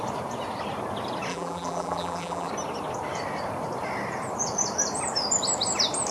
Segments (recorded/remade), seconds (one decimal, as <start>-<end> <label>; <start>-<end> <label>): 0.0-1.3 recorded; 1.3-2.5 remade; 2.5-6.1 recorded